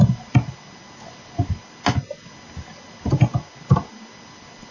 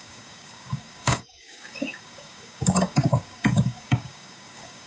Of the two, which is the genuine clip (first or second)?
first